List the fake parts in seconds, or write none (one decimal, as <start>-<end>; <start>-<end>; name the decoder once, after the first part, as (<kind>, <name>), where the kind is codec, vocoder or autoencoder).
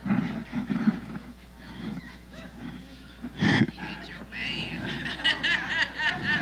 0.5-3.8 (autoencoder, DAC-VAE)